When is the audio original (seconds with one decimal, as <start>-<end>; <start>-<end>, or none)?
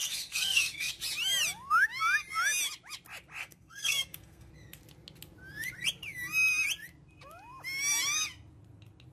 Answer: 0.9-3.4; 4.5-9.1